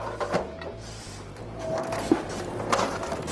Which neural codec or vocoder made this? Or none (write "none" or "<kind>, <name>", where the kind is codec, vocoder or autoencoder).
none